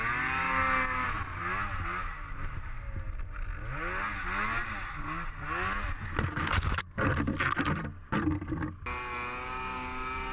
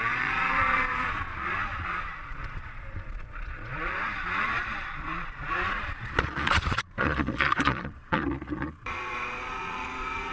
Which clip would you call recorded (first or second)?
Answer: first